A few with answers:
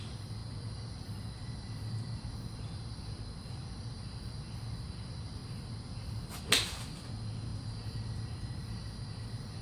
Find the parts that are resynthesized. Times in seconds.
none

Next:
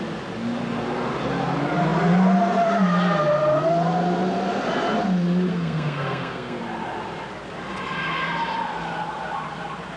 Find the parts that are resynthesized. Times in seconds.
5.5-6.6 (codec, SNAC)

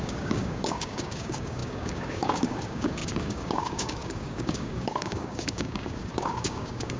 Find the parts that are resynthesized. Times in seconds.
0.0-7.0 (codec, DAC)

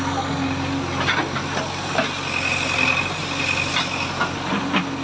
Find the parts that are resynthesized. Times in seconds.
none

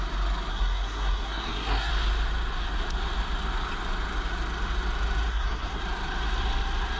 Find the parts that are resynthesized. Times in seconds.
0.5-1.9 (codec, SNAC); 5.3-5.8

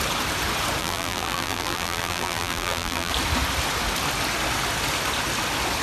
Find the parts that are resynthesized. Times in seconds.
0.8-3.1 (vocoder, BigVGAN v2)

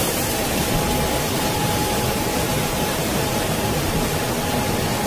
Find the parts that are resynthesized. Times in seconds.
1.6-4.2 (vocoder, BigVGAN v2)